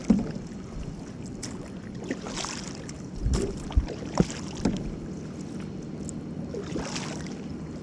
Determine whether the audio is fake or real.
real